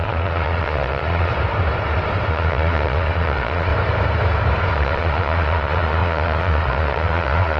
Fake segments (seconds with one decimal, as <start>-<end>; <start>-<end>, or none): 0.0-1.3; 2.3-3.7; 4.7-7.6